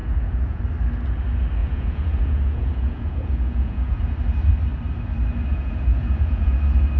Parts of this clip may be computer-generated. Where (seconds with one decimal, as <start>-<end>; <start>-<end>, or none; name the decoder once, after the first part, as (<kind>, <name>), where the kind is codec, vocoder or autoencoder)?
0.0-0.6 (vocoder, Vocos); 1.6-4.0; 5.5-6.6